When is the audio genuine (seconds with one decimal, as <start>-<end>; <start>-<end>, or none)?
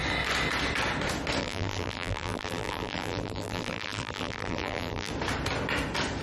0.0-1.4; 5.1-6.2